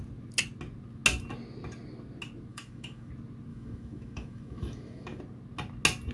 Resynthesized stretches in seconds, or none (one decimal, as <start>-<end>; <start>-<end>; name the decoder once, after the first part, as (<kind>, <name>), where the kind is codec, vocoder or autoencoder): 2.5-3.1 (autoencoder, DAC-VAE); 3.5-5.2

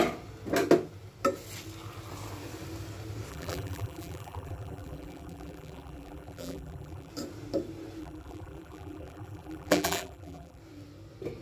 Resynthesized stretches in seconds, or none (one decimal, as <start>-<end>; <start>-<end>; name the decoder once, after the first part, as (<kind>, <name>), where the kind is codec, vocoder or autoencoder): 3.3-7.1 (vocoder, BigVGAN v2); 8.0-10.6

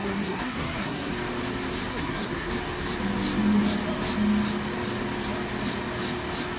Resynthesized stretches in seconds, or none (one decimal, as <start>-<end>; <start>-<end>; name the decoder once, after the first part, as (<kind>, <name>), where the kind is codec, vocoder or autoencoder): 0.0-1.1 (codec, SNAC); 1.9-2.5